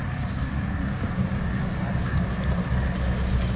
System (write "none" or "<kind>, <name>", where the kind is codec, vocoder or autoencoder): none